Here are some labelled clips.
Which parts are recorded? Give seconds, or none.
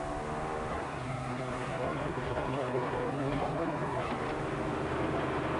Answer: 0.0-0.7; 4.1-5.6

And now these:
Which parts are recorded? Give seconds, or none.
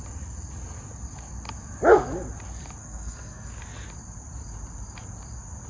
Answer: 0.0-2.8; 3.5-5.7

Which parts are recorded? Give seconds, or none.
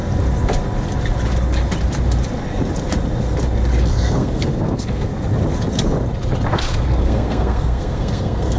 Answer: 0.0-3.9; 5.1-6.5